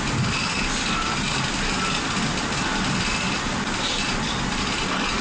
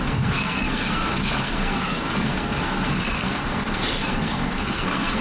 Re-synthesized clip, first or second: second